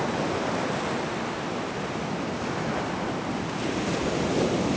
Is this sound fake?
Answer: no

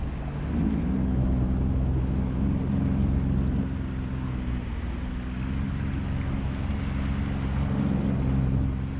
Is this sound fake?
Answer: no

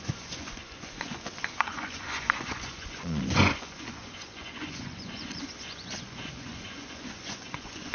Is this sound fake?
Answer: yes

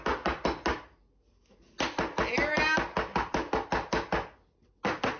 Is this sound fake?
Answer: no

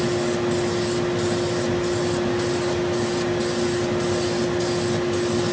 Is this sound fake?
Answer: no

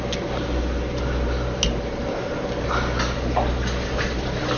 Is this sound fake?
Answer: no